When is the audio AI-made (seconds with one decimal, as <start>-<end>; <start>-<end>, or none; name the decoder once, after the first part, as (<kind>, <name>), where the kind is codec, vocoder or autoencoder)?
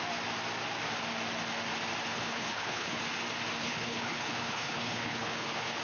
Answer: 2.1-3.0 (codec, HILCodec); 3.6-5.8